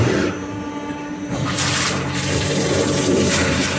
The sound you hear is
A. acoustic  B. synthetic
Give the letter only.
B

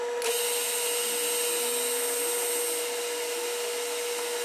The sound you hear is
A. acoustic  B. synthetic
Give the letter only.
A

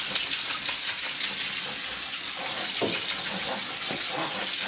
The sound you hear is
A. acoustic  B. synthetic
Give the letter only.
A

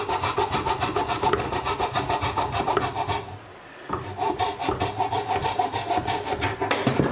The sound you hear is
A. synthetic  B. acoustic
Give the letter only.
B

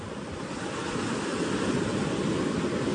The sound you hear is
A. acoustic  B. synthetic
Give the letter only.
A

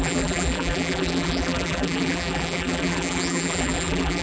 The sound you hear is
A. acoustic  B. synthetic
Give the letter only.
B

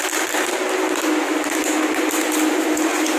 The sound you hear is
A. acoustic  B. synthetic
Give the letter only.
A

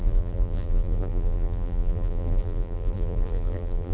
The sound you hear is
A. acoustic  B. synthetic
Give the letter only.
B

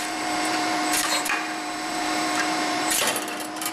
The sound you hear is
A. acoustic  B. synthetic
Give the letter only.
B